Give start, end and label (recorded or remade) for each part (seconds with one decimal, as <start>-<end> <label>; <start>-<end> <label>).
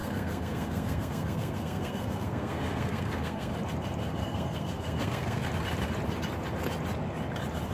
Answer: 0.0-3.5 remade; 3.5-4.2 recorded; 4.2-5.5 remade; 5.5-7.7 recorded